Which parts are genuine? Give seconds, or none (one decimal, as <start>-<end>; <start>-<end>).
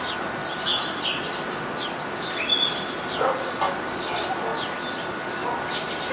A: 0.0-6.1